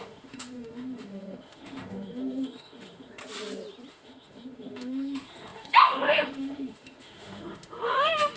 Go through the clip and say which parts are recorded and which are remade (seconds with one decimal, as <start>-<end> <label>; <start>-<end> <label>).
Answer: 0.0-3.2 remade; 3.2-3.9 recorded; 3.9-8.4 remade